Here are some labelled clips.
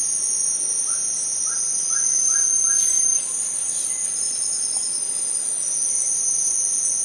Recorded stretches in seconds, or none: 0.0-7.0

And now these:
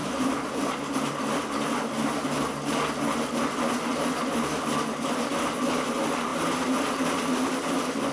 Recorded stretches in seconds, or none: 0.0-6.3; 7.2-8.1

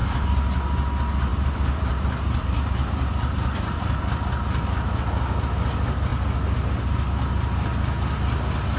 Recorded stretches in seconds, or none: 0.0-1.3; 4.3-8.8

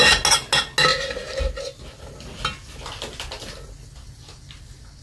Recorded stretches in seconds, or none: 0.0-5.0

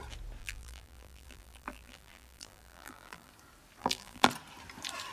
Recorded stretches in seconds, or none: 0.0-0.4; 3.3-3.8; 4.3-5.1